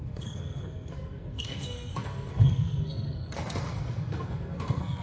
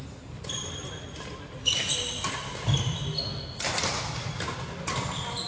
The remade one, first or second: first